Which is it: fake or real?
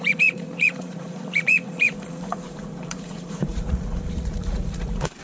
fake